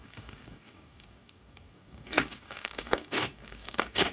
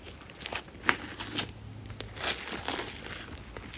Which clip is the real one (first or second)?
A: second